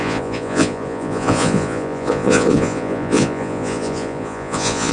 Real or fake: fake